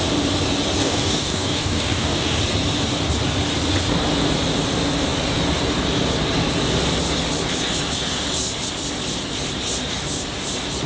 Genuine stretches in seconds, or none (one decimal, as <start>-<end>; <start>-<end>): 0.0-0.8; 2.4-10.9

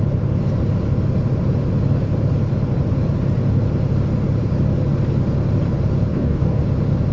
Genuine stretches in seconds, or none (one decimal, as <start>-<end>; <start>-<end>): 0.0-6.1; 6.6-7.1

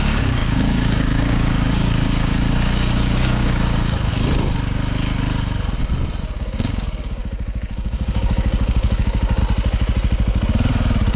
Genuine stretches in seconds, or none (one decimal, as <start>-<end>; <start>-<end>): 4.1-6.2; 9.4-10.7

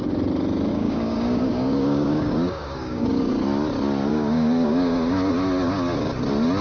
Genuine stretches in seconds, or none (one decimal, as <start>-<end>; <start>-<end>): 0.0-0.7; 3.3-4.1; 5.3-6.6

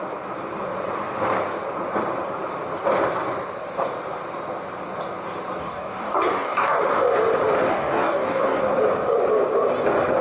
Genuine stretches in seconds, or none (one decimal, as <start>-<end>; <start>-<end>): 0.0-5.6; 6.8-7.7; 8.6-10.2

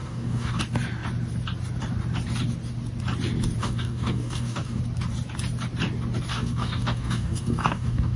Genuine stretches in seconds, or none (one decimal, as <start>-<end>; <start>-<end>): 0.6-3.6; 4.8-6.3